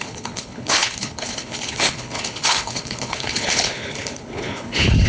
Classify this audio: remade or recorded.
remade